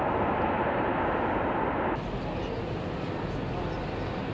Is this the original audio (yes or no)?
yes